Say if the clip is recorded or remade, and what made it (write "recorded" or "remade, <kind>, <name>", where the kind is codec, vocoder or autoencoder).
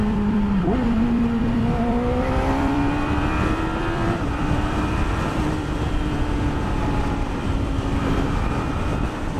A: remade, vocoder, BigVGAN v2